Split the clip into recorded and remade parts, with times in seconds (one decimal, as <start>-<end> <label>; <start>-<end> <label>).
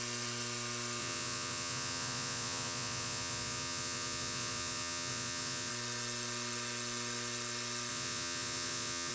0.0-1.0 recorded; 1.0-5.7 remade; 5.7-7.9 recorded; 7.9-9.1 remade